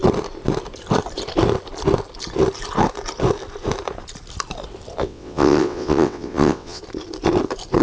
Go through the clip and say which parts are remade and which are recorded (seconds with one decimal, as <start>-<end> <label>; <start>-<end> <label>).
0.0-5.0 recorded; 5.0-6.8 remade; 6.8-7.8 recorded